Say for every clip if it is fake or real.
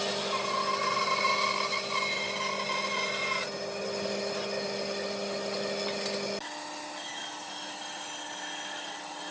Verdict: real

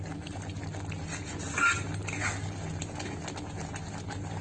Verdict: real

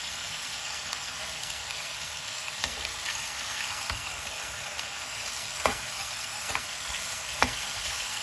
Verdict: fake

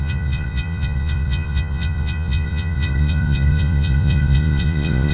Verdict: fake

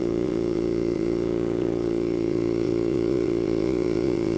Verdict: fake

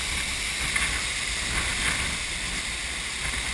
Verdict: real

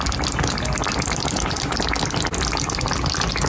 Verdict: real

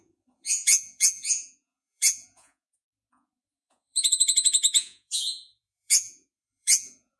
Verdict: fake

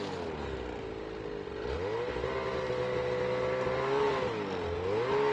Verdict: real